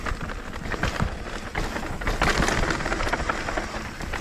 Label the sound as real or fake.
real